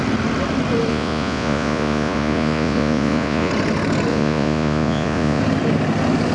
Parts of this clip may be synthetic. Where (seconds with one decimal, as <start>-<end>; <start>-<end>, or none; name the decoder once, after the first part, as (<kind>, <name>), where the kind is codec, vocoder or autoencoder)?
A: 0.9-3.5 (vocoder, Vocos); 4.1-5.4